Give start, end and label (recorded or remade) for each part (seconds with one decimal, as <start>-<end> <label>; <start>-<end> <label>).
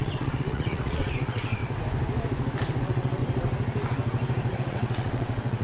0.0-1.6 remade; 1.6-2.8 recorded; 2.8-3.2 remade; 3.2-4.6 recorded; 4.6-5.6 remade